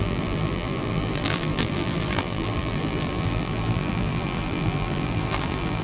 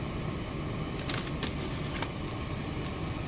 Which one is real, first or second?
second